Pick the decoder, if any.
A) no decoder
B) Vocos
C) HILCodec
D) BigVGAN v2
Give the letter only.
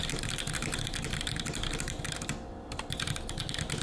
A